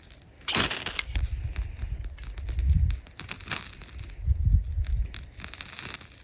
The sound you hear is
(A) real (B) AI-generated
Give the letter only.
A